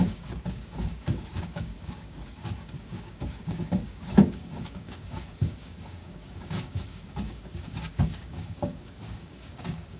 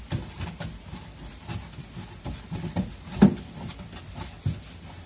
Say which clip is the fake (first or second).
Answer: first